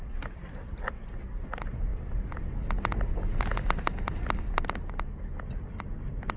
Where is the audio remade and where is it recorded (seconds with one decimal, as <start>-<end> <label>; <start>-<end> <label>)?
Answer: 0.0-1.9 remade; 1.9-5.5 recorded; 5.5-6.4 remade